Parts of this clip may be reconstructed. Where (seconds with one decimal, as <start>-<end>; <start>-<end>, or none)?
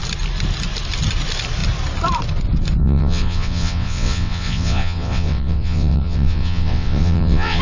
2.8-7.6